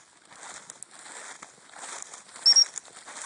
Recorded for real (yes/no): yes